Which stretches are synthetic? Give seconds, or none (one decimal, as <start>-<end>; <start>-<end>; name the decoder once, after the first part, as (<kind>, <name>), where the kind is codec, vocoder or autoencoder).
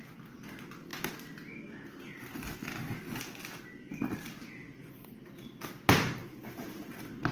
none